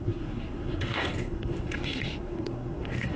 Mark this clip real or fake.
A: fake